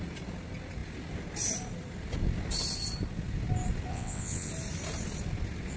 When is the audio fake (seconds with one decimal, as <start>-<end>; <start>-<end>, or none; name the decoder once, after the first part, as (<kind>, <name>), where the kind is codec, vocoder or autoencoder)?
3.9-4.5 (vocoder, WaveNeXt)